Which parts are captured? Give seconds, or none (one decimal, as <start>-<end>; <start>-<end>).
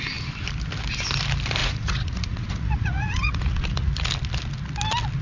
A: 0.0-1.6; 3.9-5.2